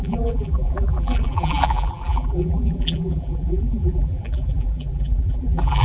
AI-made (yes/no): yes